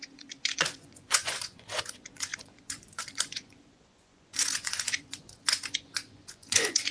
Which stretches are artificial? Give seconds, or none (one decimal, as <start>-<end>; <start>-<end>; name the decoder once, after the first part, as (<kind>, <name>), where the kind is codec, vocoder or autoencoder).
0.0-6.9 (vocoder, Vocos)